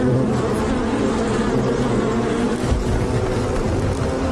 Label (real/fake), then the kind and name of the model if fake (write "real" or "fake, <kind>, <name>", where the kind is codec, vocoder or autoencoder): real